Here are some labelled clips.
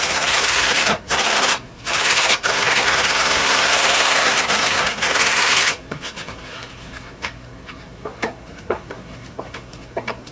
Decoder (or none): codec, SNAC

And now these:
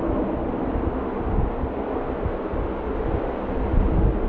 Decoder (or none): none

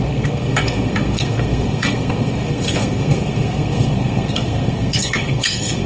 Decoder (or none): codec, SNAC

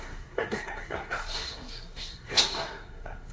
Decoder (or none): codec, SNAC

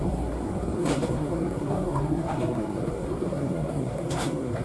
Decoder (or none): codec, SNAC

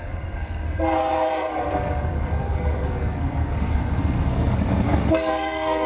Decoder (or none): codec, SNAC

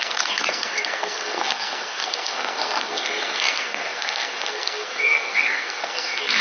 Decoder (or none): codec, SNAC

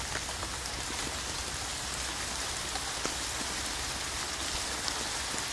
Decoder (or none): none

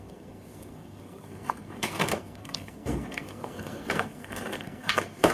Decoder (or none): codec, SNAC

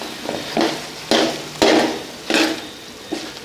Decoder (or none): none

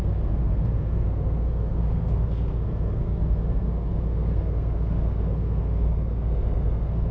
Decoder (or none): codec, SNAC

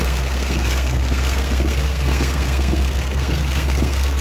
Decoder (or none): codec, SNAC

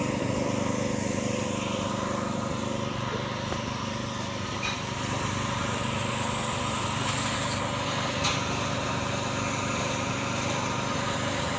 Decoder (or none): none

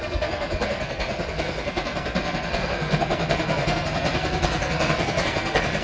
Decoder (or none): codec, SNAC